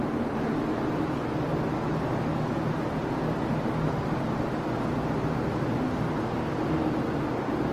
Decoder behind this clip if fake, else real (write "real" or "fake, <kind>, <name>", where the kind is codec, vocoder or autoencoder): real